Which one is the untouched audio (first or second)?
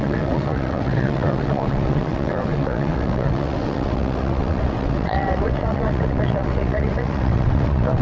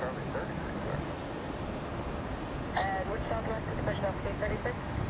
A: second